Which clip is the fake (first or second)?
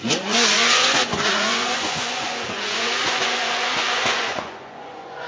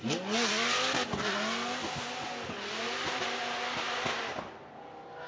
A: first